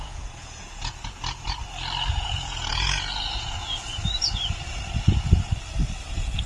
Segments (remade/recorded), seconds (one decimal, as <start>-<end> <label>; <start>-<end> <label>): 0.0-1.6 remade; 1.6-2.1 recorded; 2.1-3.9 remade; 3.9-6.1 recorded; 6.1-6.5 remade